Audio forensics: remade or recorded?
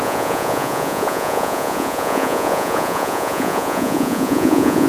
remade